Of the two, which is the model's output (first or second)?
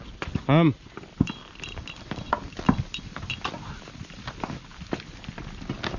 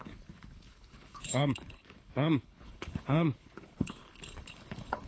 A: second